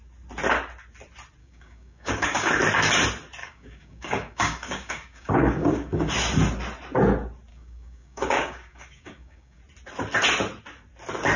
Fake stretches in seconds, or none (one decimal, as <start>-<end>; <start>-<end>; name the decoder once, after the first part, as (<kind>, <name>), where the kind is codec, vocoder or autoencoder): 1.4-2.5 (codec, DAC); 3.4-6.1; 7.5-9.6